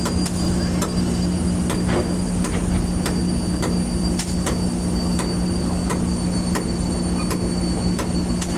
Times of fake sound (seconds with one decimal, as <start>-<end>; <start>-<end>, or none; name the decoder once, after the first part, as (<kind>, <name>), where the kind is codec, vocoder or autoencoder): none